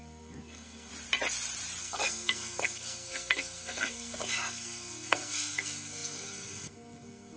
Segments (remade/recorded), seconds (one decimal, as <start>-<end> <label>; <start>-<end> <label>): 0.0-0.9 remade; 0.9-1.8 recorded; 1.8-7.4 remade